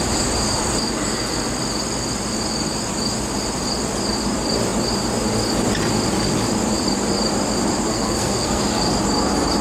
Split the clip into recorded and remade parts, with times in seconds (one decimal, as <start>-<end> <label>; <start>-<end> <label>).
0.0-7.9 recorded; 7.9-8.6 remade; 8.6-9.6 recorded